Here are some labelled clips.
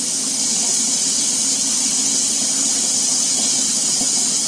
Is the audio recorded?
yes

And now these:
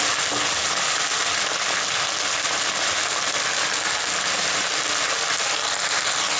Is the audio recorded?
yes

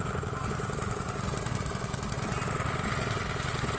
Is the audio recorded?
yes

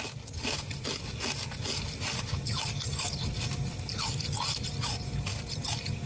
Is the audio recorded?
yes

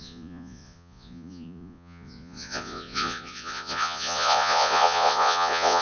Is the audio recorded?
no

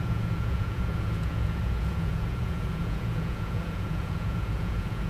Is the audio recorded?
no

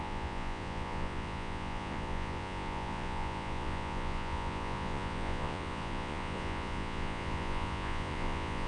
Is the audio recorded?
no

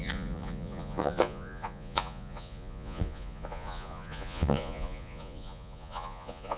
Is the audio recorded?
no